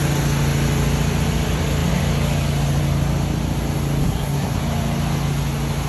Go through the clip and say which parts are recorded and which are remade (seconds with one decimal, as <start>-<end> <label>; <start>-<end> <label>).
0.0-4.0 recorded; 4.0-4.6 remade; 4.6-5.9 recorded